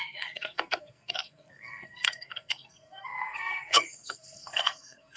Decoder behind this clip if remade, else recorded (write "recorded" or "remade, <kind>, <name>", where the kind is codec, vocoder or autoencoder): remade, codec, SNAC